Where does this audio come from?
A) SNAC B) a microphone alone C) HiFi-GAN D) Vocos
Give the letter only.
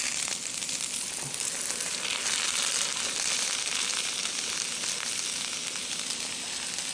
B